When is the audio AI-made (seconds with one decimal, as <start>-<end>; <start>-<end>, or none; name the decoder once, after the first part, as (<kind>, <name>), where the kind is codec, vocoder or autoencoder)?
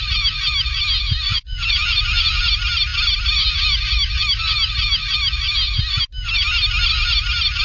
1.3-2.4 (vocoder, Vocos)